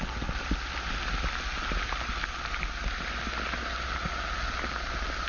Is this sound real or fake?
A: real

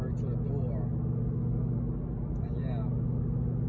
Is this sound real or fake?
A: real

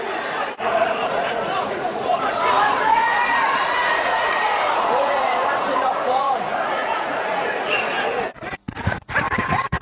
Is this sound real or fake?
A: fake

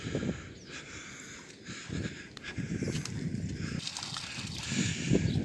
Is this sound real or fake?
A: real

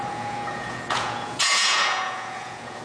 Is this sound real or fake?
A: fake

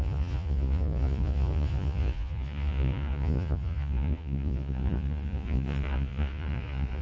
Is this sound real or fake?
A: fake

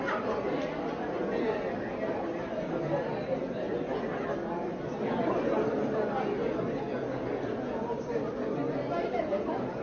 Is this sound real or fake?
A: real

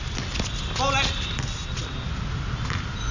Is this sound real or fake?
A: real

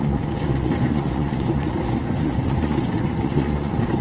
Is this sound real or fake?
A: fake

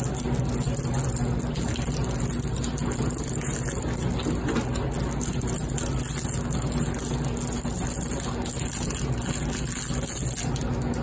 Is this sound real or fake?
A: real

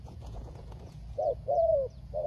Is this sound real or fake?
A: fake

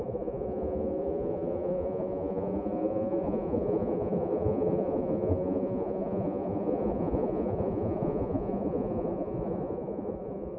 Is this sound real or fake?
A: fake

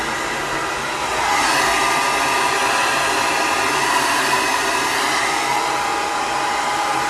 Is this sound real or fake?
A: real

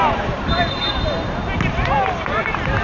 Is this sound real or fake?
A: real